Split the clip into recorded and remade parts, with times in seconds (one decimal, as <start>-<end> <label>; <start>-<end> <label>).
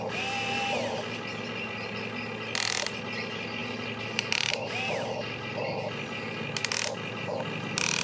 0.0-8.0 recorded